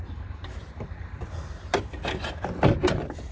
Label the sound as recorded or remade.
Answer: recorded